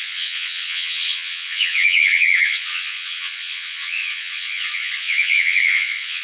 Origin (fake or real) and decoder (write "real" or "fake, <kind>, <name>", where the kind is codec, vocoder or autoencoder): fake, vocoder, Vocos